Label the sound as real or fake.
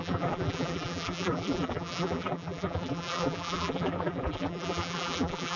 fake